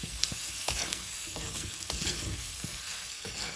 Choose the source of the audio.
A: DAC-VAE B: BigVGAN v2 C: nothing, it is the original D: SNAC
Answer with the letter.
D